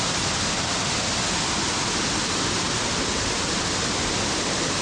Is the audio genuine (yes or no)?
yes